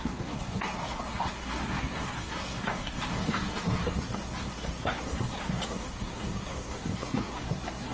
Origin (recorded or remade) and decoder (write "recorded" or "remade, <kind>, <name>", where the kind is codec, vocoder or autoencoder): remade, codec, SNAC